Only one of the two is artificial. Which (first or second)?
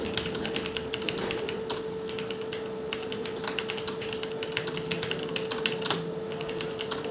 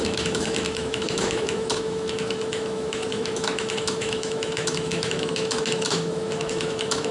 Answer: second